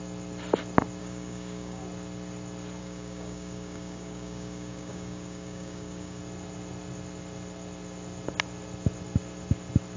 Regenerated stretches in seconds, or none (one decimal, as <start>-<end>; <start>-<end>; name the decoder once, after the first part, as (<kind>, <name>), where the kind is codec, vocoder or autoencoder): 1.0-1.8 (codec, DAC); 2.8-6.2